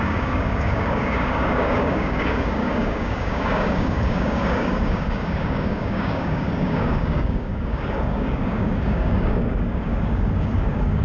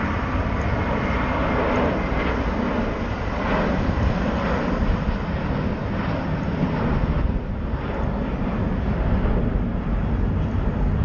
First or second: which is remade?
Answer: first